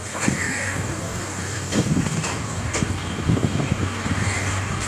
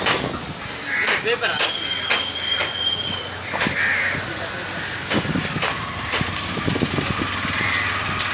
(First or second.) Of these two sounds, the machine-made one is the first